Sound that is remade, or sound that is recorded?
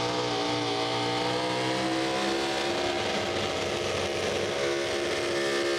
recorded